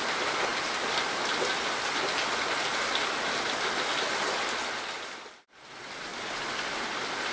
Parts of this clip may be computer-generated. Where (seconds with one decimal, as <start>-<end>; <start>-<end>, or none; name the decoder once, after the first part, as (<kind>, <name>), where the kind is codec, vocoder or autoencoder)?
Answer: none